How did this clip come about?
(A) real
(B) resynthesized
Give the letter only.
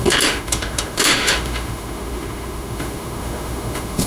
B